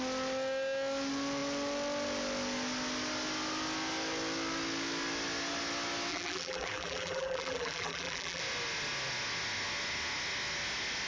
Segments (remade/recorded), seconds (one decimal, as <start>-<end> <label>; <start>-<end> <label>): 0.0-6.1 recorded; 6.1-8.4 remade; 8.4-11.1 recorded